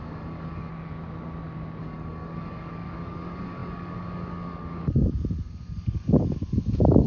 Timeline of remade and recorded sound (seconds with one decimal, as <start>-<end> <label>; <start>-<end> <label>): 0.0-0.7 remade; 0.7-1.8 recorded; 1.8-7.1 remade